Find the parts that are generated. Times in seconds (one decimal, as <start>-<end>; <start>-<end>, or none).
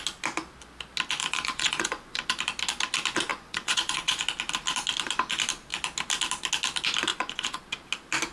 1.2-2.3; 3.3-4.2; 7.1-7.6